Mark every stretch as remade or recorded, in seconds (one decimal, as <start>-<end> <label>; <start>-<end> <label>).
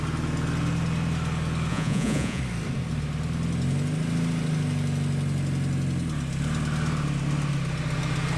0.0-1.7 recorded; 1.7-2.4 remade; 2.4-8.4 recorded